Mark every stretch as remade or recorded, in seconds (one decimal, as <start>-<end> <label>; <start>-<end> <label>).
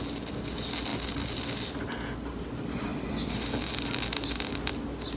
0.0-5.2 recorded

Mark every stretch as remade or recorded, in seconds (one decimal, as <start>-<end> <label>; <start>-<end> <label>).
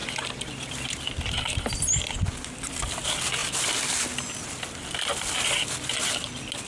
0.0-6.7 recorded